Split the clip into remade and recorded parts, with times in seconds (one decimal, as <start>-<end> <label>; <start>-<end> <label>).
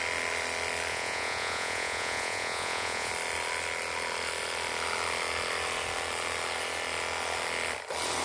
0.0-0.9 recorded; 0.9-3.1 remade; 3.1-8.2 recorded